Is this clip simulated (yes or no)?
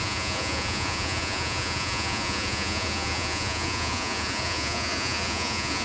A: yes